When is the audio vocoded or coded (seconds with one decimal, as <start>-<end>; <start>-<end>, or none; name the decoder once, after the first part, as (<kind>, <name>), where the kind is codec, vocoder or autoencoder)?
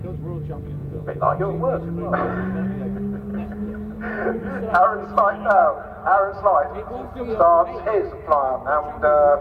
0.8-1.4 (vocoder, Vocos)